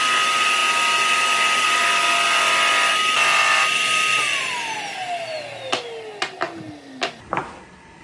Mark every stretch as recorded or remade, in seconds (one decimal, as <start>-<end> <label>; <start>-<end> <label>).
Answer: 0.0-8.0 recorded